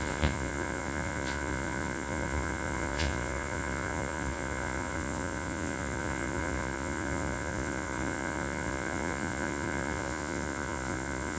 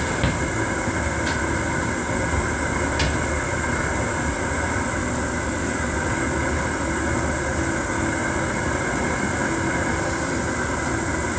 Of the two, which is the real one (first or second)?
second